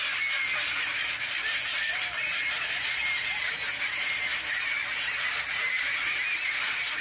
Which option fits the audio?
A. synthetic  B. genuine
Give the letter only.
B